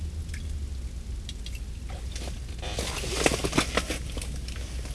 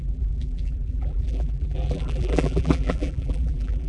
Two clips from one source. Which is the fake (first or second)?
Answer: second